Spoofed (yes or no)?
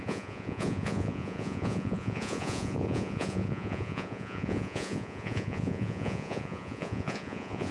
yes